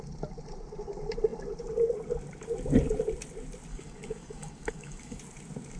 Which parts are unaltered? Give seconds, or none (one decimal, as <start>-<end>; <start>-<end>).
0.0-3.7; 5.2-5.8